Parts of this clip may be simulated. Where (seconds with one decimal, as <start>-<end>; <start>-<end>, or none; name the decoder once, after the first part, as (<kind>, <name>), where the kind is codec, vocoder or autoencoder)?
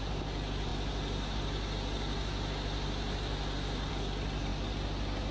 none